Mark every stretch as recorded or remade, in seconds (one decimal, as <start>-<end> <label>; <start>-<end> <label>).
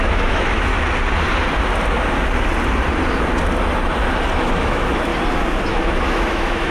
0.0-0.7 remade; 0.7-4.4 recorded; 4.4-5.1 remade; 5.1-5.7 recorded; 5.7-6.7 remade